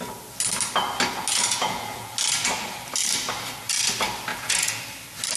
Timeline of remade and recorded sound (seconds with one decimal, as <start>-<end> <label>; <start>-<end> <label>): 0.0-1.3 recorded; 1.3-2.1 remade; 2.1-4.3 recorded; 4.3-4.8 remade; 4.8-5.4 recorded